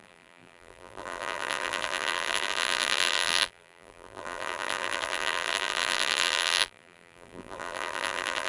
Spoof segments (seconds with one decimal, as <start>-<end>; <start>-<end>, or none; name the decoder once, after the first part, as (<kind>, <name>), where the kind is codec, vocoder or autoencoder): 0.0-8.5 (vocoder, BigVGAN v2)